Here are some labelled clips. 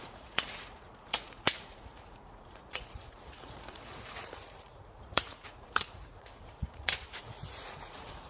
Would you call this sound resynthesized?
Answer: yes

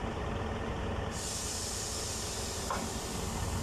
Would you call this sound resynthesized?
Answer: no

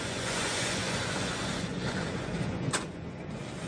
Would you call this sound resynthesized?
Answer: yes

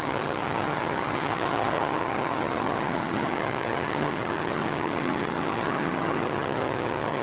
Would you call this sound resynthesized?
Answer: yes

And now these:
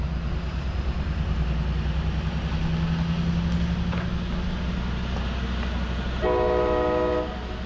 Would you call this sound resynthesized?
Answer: no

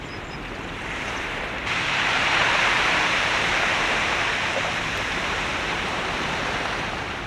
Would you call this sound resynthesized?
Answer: yes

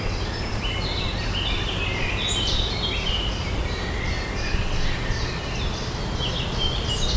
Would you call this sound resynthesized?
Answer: no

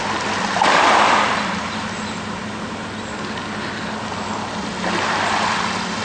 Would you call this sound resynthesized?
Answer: no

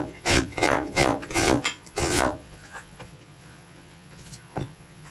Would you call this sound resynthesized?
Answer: yes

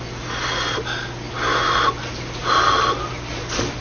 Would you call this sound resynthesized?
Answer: no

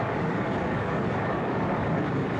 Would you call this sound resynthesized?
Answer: yes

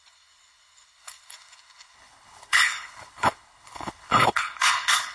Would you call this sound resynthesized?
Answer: yes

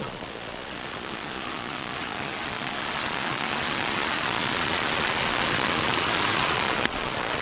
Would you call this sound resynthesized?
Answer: yes